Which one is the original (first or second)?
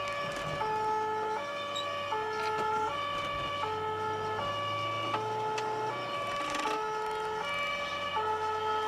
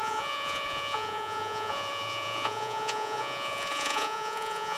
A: first